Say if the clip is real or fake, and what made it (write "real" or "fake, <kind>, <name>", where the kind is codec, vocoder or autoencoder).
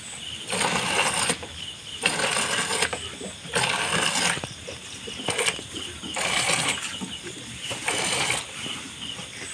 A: real